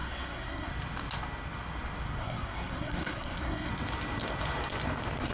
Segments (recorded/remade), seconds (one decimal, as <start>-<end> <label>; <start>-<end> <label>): 0.0-0.7 remade; 0.7-2.2 recorded; 2.2-3.7 remade; 3.7-5.3 recorded